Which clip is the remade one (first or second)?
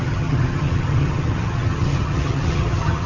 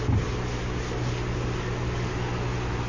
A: first